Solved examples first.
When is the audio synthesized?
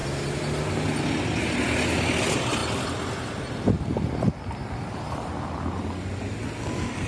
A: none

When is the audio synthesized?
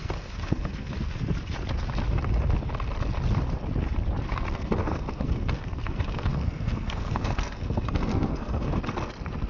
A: 0.0-0.9 (codec, SNAC); 4.3-8.7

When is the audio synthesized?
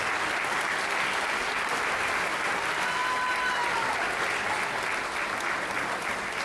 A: none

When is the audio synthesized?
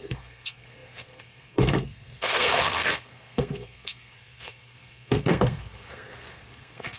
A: 0.0-7.0 (codec, SNAC)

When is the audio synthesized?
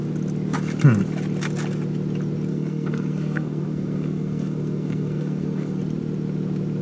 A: 2.5-5.8 (codec, SNAC)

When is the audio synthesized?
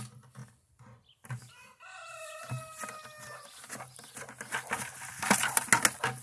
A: none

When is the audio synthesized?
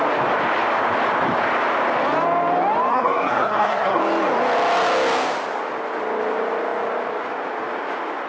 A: 2.9-4.0 (codec, SNAC)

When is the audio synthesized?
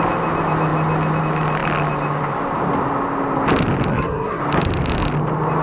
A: 3.9-4.4 (codec, SNAC)